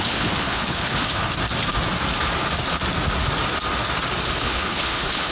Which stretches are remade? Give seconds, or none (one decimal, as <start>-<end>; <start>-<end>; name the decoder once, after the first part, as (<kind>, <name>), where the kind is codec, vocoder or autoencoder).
0.0-1.2 (codec, HILCodec); 4.4-5.3

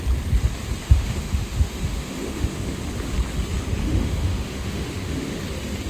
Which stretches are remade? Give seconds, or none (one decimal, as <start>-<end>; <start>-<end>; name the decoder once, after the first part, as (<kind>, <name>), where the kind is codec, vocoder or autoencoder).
0.8-2.8 (autoencoder, DAC-VAE); 3.8-5.4

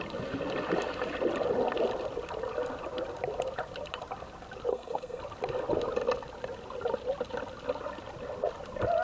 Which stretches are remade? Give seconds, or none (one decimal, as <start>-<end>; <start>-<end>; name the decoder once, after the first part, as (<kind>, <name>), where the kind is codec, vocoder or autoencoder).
4.7-5.2 (codec, SNAC)

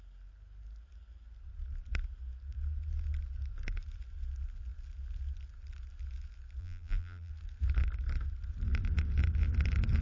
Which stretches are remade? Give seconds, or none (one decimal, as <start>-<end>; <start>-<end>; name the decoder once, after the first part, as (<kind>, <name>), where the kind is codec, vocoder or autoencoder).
6.6-7.3 (vocoder, BigVGAN v2)

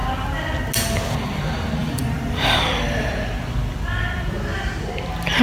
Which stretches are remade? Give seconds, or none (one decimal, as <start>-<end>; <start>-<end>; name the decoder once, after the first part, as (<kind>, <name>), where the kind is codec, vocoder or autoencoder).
1.8-3.1 (vocoder, BigVGAN v2)